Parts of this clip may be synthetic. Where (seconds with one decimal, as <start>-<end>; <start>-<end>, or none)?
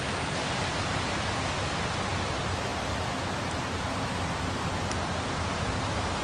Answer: none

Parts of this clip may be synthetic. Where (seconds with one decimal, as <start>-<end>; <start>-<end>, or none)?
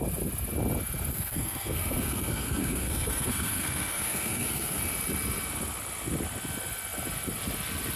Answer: 1.1-4.8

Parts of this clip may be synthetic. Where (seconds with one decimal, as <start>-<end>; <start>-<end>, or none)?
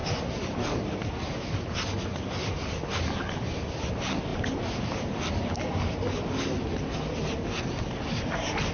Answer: none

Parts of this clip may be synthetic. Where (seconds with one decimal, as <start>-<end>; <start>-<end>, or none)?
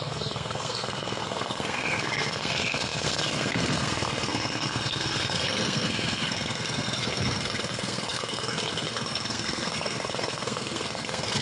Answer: 0.0-11.4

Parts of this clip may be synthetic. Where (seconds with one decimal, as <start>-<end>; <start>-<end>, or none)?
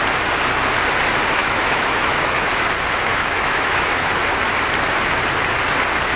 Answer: 1.4-2.6; 3.1-4.1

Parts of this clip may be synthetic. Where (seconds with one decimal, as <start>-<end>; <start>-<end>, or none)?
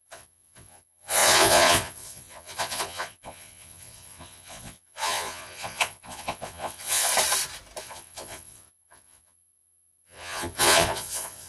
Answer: 0.0-7.1; 7.8-11.5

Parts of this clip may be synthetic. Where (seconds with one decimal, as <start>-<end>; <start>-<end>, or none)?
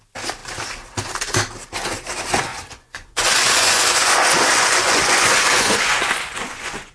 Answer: 2.5-6.9